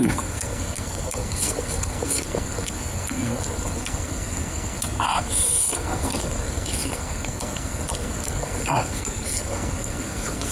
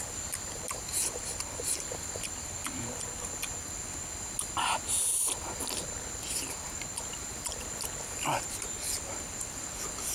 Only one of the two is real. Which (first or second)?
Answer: second